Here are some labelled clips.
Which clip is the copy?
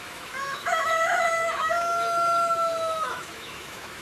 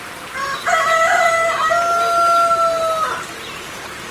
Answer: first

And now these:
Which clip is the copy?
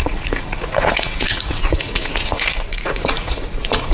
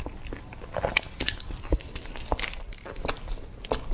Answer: first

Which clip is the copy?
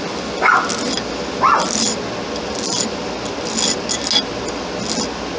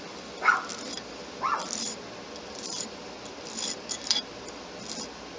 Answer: second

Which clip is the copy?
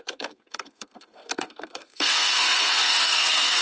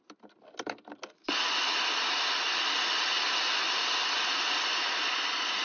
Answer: first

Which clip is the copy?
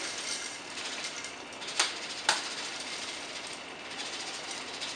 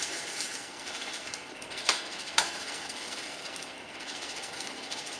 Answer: second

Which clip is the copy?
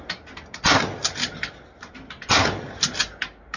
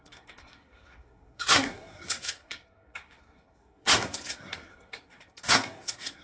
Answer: second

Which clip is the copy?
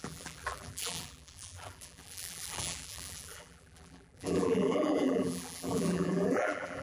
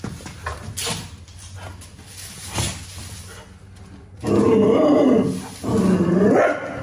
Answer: first